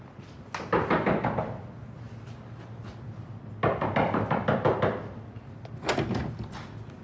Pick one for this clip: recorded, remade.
recorded